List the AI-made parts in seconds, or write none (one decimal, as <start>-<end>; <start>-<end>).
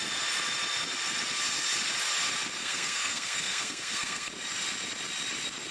2.6-4.3